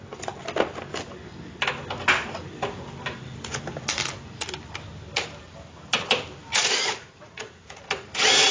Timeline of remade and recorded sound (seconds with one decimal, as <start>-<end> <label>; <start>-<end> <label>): 0.0-6.6 recorded; 6.6-7.8 remade; 7.8-8.5 recorded